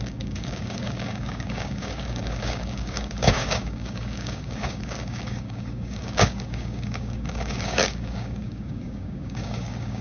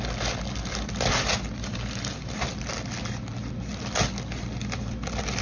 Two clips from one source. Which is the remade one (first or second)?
first